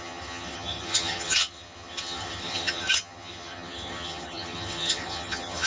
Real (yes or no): no